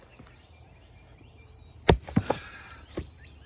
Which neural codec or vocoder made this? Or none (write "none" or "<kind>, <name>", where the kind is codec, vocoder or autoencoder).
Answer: vocoder, BigVGAN v2